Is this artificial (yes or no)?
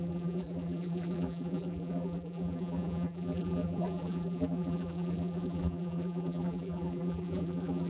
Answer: yes